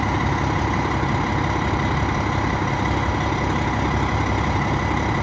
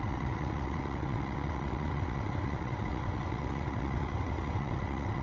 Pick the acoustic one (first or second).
first